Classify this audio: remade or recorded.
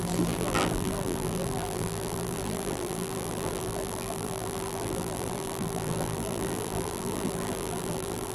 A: remade